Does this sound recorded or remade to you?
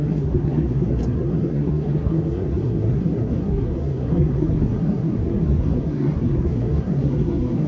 remade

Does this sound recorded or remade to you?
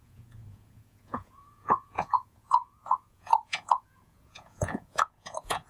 remade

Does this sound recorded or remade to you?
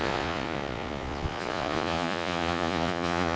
remade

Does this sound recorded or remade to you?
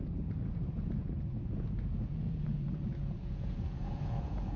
remade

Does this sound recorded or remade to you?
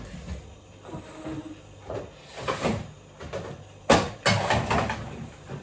recorded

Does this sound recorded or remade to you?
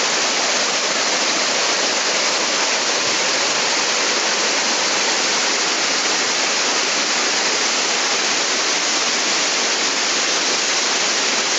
recorded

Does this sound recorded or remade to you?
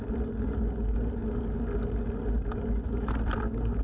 recorded